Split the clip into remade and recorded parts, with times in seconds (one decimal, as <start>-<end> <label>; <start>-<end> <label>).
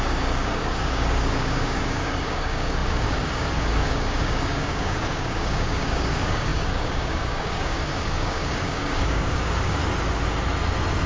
0.0-9.8 remade; 9.8-11.1 recorded